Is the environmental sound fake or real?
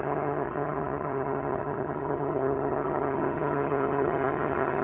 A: fake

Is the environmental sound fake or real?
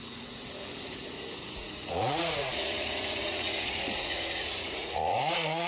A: fake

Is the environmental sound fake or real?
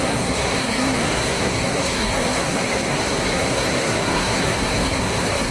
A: fake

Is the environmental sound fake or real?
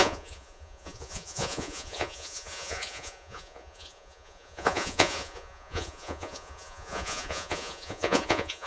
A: fake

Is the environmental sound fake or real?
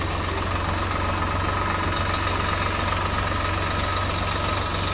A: real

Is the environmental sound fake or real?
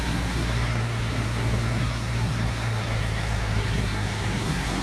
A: fake